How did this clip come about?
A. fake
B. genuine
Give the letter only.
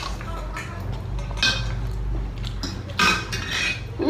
B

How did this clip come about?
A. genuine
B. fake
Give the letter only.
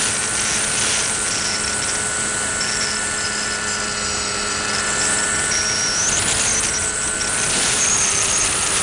A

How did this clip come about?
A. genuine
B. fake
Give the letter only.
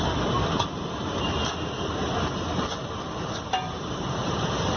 A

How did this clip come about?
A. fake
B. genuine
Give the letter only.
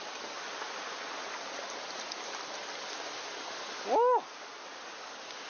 B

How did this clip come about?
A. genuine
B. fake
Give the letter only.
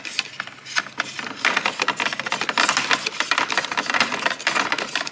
A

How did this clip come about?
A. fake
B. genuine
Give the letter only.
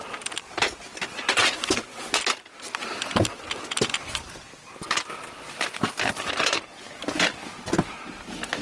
B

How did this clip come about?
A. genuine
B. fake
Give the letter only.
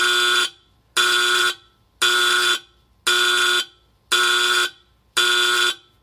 A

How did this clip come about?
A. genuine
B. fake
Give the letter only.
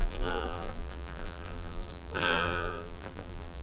B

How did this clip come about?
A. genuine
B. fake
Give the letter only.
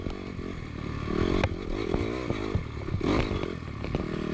A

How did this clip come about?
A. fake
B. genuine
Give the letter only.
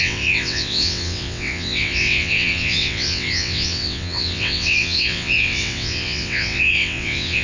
A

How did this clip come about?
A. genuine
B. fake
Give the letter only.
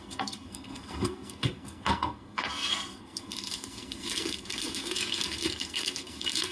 B